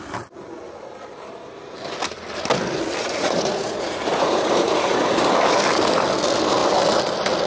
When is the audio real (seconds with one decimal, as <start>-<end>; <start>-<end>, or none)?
0.0-3.0; 5.2-7.5